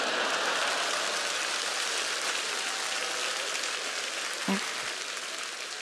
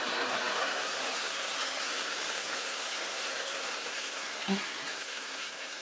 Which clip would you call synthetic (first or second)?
second